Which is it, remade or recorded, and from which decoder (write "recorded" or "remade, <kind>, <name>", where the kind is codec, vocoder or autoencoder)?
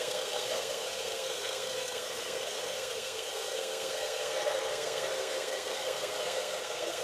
remade, codec, SNAC